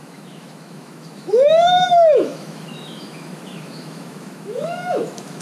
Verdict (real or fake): fake